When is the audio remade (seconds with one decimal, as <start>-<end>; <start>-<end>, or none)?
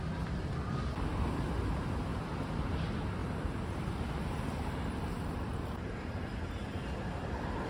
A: 2.1-2.8; 3.2-7.7